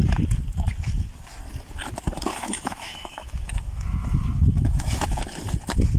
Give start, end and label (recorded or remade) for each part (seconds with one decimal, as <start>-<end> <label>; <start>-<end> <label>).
0.0-2.3 recorded; 2.3-5.2 remade; 5.2-6.0 recorded